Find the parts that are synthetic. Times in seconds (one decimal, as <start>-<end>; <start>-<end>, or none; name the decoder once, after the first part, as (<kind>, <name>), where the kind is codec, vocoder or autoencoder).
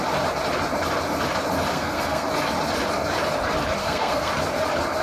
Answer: 1.7-2.3 (codec, SNAC); 3.8-4.3